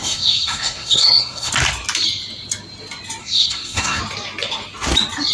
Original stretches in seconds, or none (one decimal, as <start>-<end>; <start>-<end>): 1.5-3.2; 4.0-5.3